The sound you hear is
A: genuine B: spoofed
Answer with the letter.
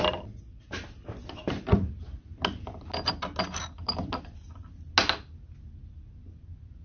A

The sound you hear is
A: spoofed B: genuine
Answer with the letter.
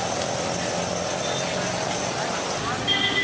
B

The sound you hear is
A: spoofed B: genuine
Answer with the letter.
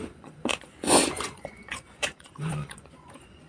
A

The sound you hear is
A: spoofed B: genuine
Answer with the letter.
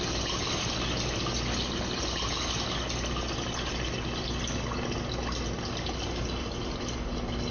B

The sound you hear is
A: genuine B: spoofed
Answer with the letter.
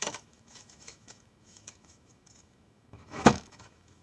B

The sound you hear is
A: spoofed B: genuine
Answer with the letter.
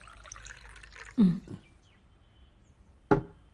B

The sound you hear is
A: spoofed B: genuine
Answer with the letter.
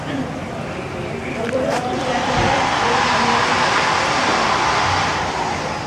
A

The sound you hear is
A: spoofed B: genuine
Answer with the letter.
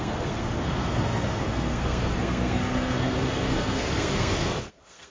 A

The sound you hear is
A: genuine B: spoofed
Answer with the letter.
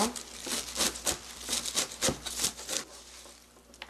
A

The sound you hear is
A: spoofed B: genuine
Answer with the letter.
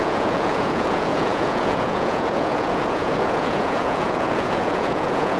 A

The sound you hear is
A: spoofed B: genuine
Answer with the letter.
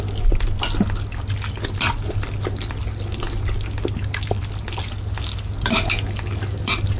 B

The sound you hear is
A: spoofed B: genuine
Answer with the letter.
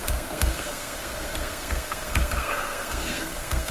A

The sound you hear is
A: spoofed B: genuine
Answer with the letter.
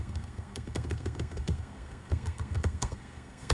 A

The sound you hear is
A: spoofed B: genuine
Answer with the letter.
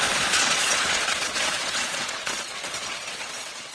A